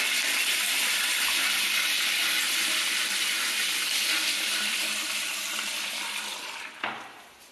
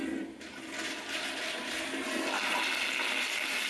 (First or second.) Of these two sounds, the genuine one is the second